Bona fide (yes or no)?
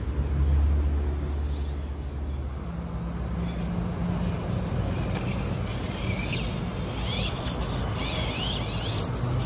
yes